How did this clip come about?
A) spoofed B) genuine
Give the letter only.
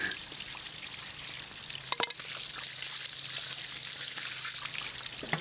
B